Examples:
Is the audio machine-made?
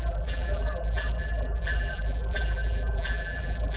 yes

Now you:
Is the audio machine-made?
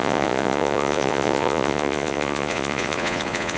yes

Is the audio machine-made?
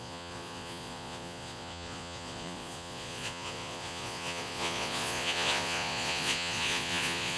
yes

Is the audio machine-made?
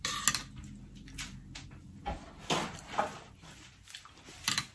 no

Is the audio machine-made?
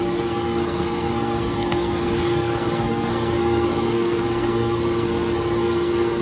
yes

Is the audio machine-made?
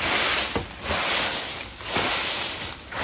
no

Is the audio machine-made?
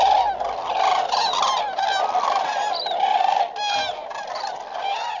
no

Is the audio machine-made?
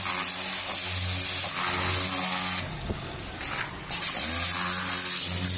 no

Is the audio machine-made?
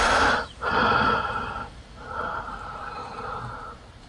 yes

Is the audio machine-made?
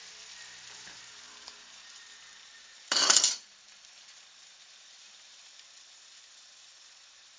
yes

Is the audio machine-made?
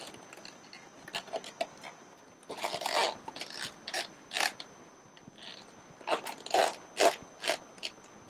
no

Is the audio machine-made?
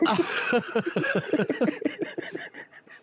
yes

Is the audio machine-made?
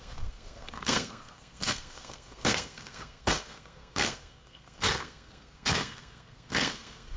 yes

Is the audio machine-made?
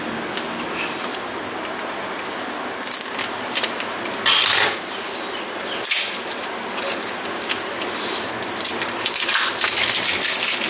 no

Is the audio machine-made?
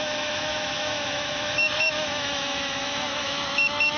yes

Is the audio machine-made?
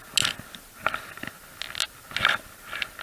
no